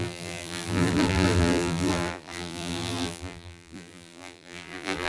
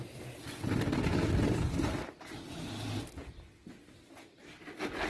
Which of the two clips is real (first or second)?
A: second